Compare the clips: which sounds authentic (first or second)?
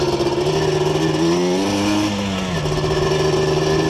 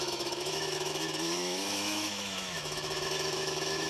first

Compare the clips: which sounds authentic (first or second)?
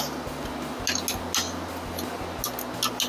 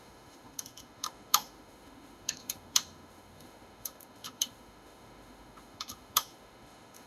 first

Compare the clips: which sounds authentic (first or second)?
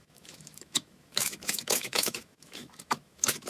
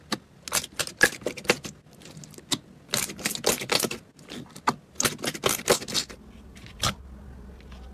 second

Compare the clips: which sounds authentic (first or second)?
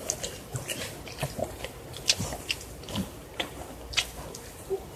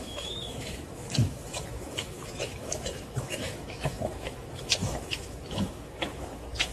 first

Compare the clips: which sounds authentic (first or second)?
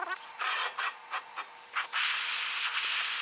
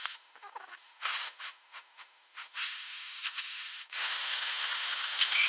first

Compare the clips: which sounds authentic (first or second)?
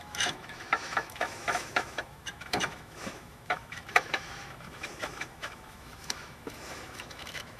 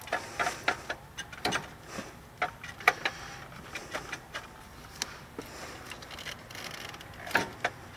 second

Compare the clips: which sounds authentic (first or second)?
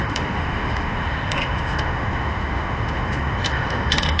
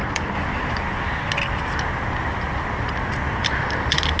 second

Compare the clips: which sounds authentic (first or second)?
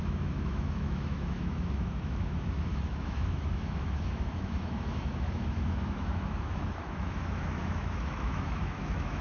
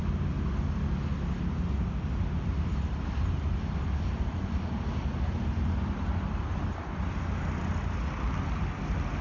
second